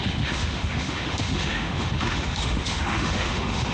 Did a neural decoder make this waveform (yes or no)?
yes